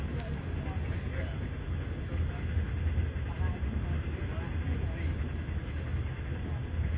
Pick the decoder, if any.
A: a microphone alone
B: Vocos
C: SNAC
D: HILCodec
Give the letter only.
A